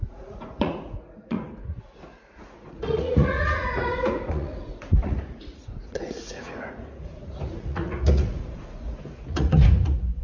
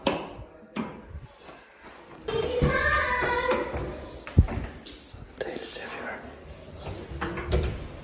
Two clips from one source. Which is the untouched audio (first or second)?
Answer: second